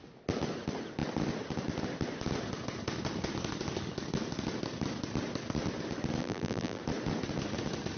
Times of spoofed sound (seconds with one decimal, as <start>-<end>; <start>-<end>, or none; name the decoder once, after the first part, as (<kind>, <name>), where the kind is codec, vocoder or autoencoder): 6.2-6.8 (vocoder, BigVGAN v2)